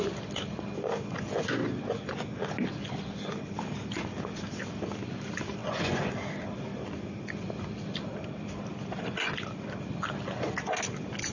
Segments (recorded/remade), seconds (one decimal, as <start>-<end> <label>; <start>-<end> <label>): 0.0-5.6 recorded; 5.6-6.1 remade; 6.1-11.3 recorded